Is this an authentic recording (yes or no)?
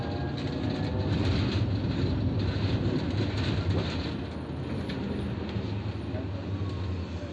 yes